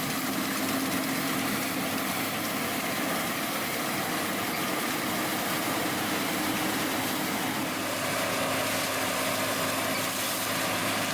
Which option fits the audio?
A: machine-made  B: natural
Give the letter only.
B